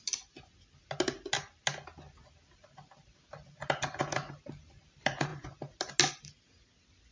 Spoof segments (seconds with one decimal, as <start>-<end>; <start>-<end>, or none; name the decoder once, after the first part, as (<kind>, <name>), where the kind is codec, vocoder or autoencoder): none